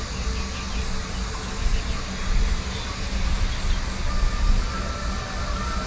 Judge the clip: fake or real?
real